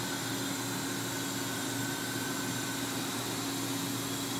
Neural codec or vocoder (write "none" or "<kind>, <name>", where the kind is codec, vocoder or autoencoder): none